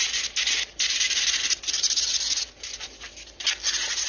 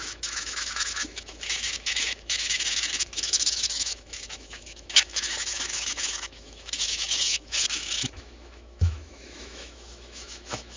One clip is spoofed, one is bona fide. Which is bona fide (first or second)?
first